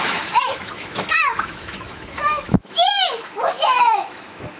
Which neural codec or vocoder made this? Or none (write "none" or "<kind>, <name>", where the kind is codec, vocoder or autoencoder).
autoencoder, DAC-VAE